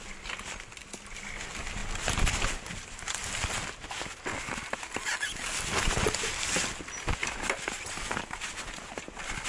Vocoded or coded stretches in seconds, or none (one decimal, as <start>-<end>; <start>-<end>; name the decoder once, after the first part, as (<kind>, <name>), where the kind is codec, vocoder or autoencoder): none